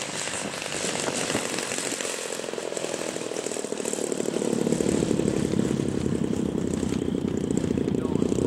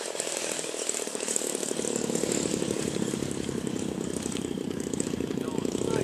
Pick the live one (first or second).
first